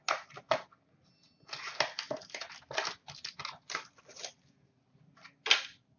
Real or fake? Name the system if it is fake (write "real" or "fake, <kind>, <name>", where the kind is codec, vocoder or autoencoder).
real